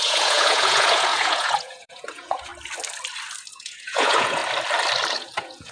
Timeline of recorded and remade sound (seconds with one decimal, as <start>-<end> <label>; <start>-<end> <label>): 0.0-2.5 remade; 2.5-3.5 recorded; 3.5-4.4 remade; 4.4-5.1 recorded; 5.1-5.7 remade